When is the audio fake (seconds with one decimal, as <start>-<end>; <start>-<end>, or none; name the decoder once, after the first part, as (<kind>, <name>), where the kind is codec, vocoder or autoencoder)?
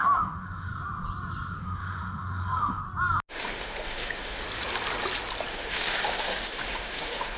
0.0-0.7 (autoencoder, DAC-VAE); 1.6-2.8; 3.3-4.4; 5.5-7.4